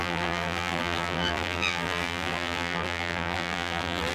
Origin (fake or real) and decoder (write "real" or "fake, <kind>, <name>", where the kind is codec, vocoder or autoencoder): fake, vocoder, BigVGAN v2